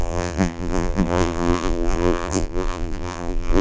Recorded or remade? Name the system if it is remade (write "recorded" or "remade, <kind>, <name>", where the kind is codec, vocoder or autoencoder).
remade, vocoder, BigVGAN v2